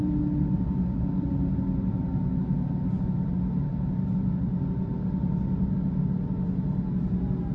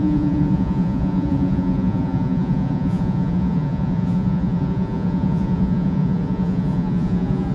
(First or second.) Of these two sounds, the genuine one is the first